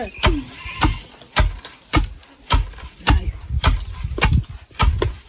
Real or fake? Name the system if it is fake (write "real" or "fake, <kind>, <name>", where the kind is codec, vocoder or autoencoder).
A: real